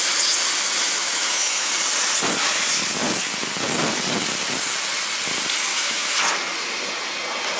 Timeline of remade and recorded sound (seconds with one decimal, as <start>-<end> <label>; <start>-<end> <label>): 0.0-1.0 recorded; 1.0-1.7 remade; 1.7-5.7 recorded; 5.7-6.2 remade; 6.2-7.6 recorded